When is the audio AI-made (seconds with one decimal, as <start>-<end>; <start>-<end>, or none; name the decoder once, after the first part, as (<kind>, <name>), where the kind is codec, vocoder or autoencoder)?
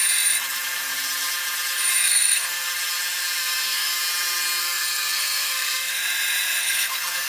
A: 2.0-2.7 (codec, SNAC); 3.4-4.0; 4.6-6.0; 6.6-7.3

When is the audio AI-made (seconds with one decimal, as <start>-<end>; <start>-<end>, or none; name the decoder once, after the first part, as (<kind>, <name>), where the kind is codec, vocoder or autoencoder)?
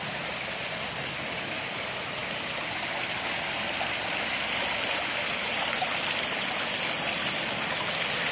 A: none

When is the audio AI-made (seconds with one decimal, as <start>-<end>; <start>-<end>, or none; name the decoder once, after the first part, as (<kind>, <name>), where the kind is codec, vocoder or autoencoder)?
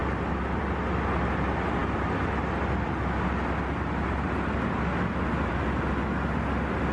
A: none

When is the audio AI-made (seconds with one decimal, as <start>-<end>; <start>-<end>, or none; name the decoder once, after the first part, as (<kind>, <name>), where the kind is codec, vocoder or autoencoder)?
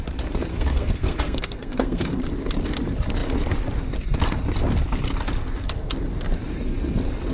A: 0.5-2.2 (codec, SNAC)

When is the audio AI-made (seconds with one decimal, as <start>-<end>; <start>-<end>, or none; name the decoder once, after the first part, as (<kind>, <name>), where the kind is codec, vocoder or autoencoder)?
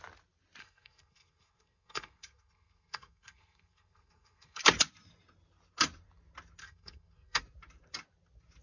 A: 0.6-4.6 (codec, SNAC); 6.6-7.4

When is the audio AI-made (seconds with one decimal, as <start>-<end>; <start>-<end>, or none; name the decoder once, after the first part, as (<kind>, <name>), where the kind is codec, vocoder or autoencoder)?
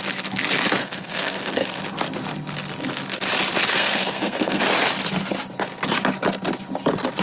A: 0.8-1.8 (codec, SNAC); 3.7-4.6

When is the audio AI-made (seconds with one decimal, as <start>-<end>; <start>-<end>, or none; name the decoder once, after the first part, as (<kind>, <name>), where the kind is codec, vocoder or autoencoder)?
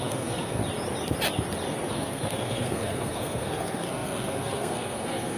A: 0.0-0.6 (codec, SNAC); 1.9-5.4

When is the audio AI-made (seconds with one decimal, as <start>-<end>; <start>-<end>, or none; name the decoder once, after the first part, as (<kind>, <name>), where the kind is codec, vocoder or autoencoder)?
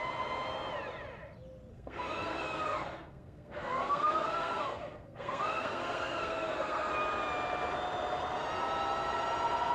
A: 1.7-6.9 (codec, SNAC)